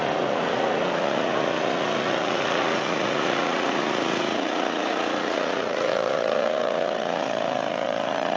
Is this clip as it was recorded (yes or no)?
no